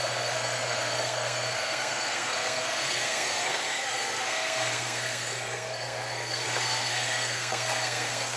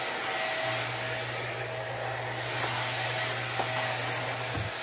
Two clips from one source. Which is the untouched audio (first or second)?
second